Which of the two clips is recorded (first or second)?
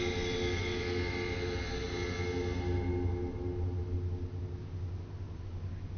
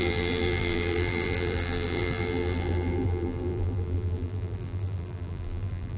first